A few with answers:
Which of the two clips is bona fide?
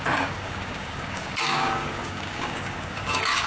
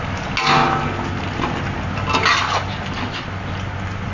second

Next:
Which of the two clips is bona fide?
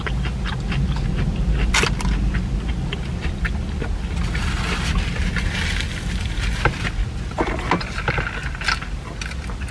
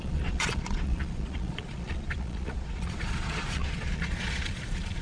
first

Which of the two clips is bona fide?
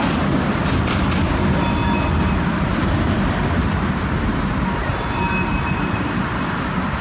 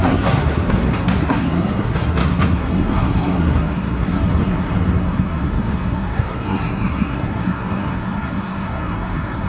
first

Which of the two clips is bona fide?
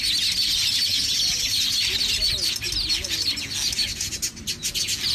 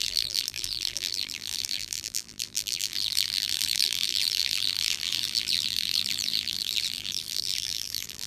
first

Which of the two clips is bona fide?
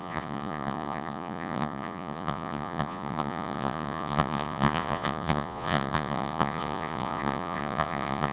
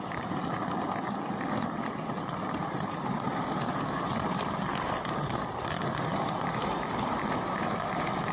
second